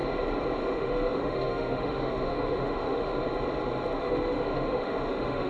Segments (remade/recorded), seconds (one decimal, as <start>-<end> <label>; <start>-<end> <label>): 0.0-0.6 recorded; 0.6-3.1 remade; 3.1-4.0 recorded; 4.0-5.5 remade